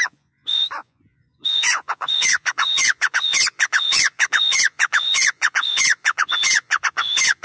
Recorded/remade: remade